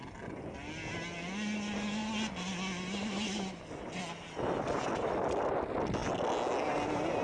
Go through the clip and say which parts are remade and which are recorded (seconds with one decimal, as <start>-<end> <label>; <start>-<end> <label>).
0.0-7.2 recorded